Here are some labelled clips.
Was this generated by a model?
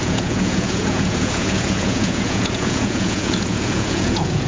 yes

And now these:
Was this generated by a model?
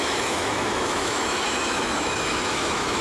yes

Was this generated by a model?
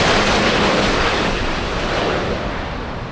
no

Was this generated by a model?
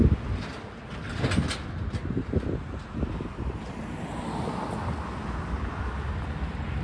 no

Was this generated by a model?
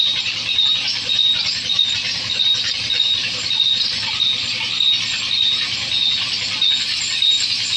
no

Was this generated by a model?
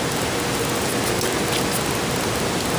no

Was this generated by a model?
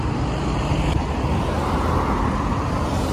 no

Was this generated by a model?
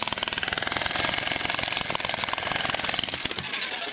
no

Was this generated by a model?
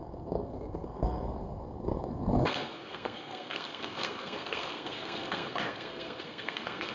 yes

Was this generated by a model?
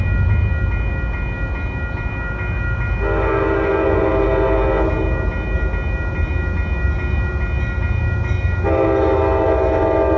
no